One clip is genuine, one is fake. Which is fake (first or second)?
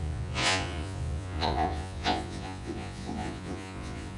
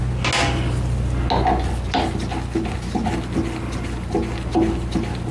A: first